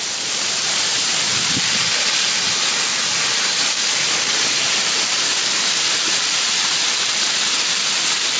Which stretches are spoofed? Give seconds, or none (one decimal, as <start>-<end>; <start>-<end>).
0.0-8.4